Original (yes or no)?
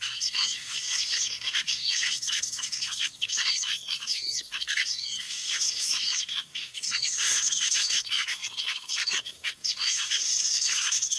no